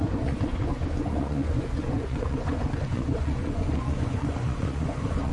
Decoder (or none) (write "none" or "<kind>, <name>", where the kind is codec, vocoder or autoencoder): vocoder, Vocos